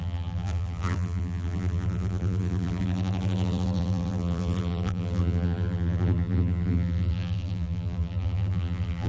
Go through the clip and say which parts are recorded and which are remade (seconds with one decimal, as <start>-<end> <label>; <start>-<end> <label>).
0.0-9.1 remade